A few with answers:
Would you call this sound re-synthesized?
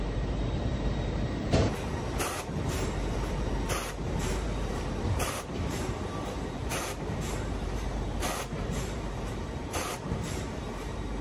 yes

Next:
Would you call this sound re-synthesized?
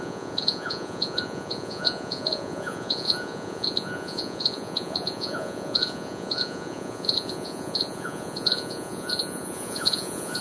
yes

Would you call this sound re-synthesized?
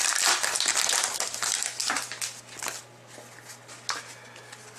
no